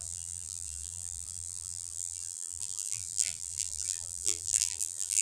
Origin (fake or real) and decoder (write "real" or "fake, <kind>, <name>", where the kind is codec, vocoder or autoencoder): fake, vocoder, BigVGAN v2